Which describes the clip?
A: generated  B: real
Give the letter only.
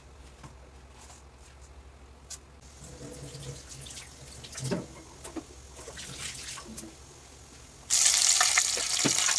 B